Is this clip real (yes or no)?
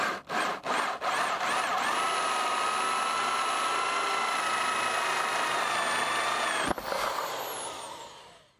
yes